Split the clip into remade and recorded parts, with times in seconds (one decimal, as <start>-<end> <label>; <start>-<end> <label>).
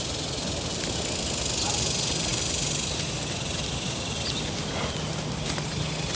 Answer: 0.0-6.1 recorded